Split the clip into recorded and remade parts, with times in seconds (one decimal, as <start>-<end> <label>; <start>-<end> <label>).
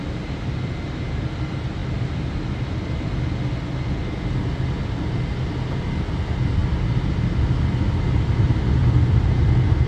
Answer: 0.0-9.9 recorded